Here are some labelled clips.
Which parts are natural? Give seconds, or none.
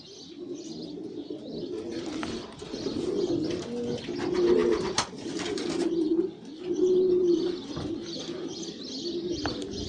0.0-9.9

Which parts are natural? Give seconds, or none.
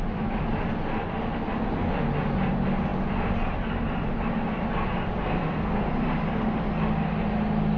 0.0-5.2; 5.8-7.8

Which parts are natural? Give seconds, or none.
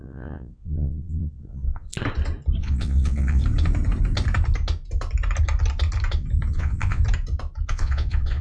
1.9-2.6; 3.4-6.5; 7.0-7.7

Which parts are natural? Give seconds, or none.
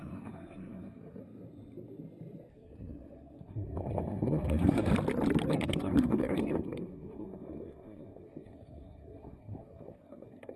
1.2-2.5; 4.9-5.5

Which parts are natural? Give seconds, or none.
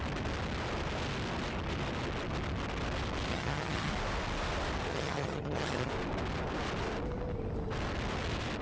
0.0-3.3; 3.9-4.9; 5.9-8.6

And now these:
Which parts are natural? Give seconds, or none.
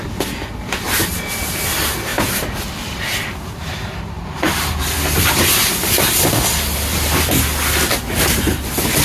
0.0-2.1; 6.3-6.9; 7.4-9.0